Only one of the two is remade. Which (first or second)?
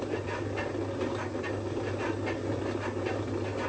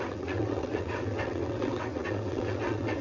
second